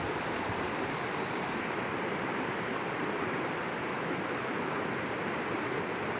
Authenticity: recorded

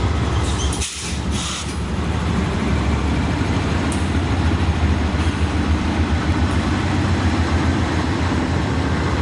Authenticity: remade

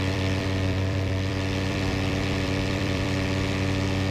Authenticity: remade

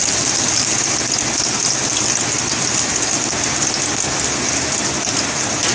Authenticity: recorded